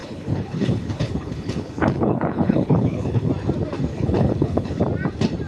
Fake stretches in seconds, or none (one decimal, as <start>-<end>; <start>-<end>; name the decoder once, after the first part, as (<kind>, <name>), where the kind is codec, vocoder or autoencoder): 0.0-3.3 (codec, HILCodec); 3.9-4.8